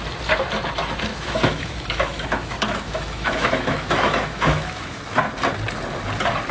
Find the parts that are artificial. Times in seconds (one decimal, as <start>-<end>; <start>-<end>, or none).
1.1-5.0